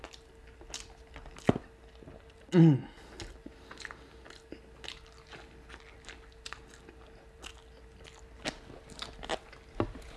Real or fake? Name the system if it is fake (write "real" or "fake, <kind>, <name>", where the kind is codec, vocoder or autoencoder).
real